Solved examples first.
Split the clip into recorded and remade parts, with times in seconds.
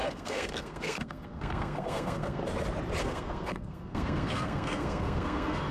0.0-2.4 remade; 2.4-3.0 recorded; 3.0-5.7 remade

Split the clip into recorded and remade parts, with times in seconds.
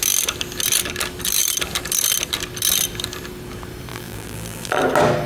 0.0-3.9 recorded; 3.9-4.8 remade; 4.8-5.3 recorded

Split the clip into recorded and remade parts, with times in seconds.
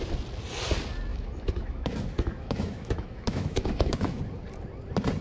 0.0-1.1 recorded; 1.1-4.2 remade; 4.2-5.2 recorded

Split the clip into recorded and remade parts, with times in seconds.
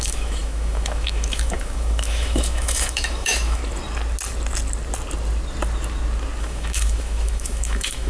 0.0-3.6 remade; 3.6-6.4 recorded; 6.4-8.1 remade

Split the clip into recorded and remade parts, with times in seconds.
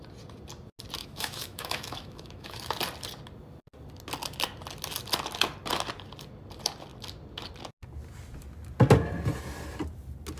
0.0-1.0 recorded; 1.0-2.6 remade; 2.6-10.4 recorded